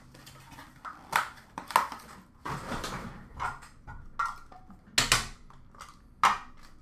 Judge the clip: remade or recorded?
recorded